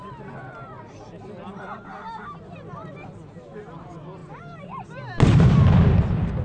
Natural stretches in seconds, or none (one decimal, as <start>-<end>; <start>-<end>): 0.0-6.4